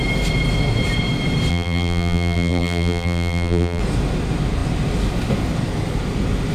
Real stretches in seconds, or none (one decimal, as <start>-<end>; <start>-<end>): 0.0-1.5; 3.8-6.5

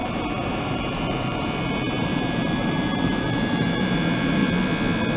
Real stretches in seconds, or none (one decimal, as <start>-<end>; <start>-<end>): 4.4-5.2

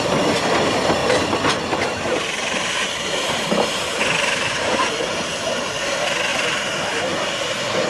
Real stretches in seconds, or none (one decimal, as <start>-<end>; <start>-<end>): 0.0-1.0; 5.7-6.3; 7.2-7.9